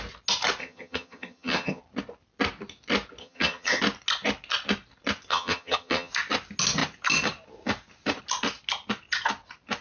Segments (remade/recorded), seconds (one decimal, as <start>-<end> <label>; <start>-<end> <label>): 0.0-0.6 recorded; 0.6-1.8 remade; 1.8-3.2 recorded; 3.2-3.8 remade; 3.8-5.3 recorded; 5.3-6.1 remade; 6.1-9.8 recorded